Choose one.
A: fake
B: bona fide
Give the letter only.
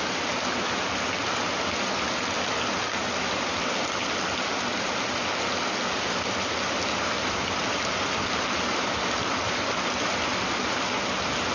B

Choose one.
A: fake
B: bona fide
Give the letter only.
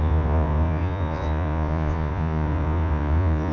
A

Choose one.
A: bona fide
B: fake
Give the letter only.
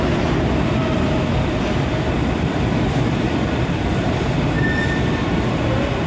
A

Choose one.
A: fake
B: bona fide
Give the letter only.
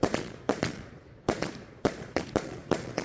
A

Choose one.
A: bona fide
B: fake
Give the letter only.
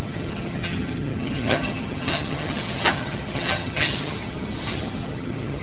B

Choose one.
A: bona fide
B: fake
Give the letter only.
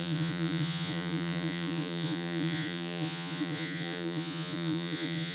B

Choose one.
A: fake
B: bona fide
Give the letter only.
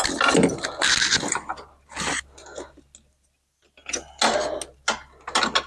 B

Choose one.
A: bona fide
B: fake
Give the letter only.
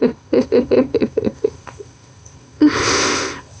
B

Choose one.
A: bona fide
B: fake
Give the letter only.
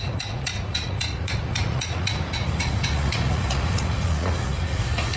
B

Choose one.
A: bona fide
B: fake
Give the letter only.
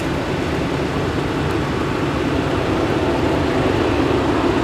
A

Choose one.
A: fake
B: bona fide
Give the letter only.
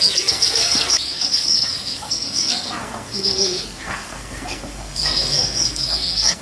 A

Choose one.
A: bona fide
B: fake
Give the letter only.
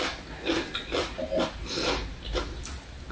A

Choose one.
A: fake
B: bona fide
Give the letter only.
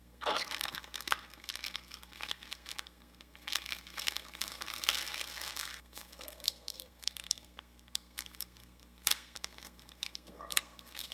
A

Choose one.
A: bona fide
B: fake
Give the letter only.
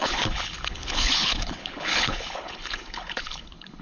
B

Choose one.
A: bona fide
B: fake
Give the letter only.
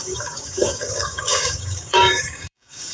B